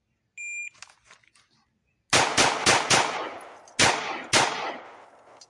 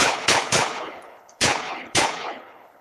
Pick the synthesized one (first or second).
second